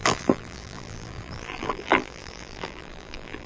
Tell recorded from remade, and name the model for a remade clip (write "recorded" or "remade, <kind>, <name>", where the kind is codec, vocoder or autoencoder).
remade, vocoder, BigVGAN v2